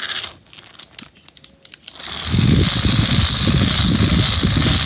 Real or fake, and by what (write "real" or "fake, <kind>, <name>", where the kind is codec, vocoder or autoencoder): real